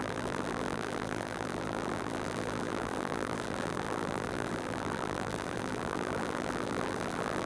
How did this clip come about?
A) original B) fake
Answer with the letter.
B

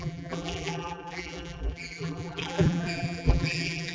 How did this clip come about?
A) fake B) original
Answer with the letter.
A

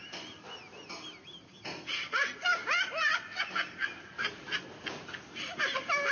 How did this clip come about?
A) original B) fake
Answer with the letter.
B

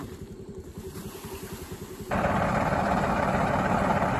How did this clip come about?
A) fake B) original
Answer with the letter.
A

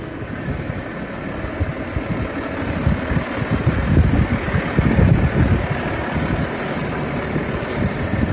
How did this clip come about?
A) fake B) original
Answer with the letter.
B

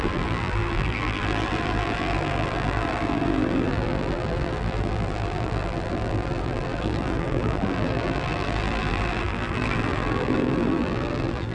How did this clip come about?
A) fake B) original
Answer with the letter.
A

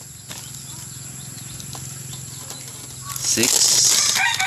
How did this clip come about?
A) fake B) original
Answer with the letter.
B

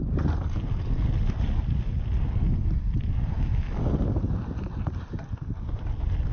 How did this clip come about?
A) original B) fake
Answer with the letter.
A